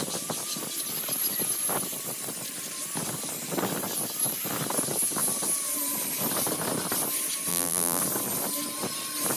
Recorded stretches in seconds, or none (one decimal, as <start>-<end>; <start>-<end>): 0.0-7.5; 8.0-9.4